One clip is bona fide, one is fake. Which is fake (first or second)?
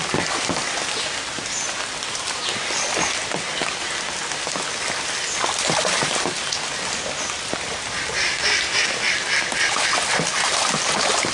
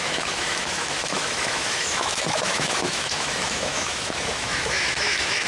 second